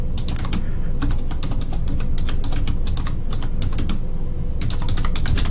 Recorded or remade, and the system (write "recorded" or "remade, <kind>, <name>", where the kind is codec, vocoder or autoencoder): recorded